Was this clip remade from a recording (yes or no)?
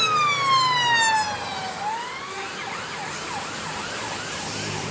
no